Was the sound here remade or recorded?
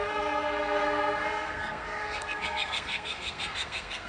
remade